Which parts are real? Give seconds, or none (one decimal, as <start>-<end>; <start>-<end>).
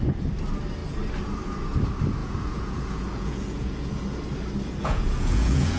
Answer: 0.0-2.2; 3.9-4.8